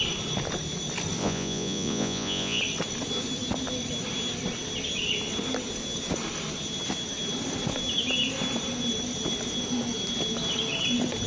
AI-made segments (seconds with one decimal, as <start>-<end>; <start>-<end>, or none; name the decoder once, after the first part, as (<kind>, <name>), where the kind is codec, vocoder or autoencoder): 1.2-2.6 (vocoder, Vocos)